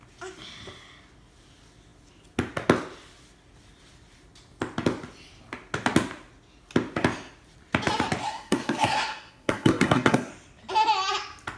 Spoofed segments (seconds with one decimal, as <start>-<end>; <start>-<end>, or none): 8.2-10.3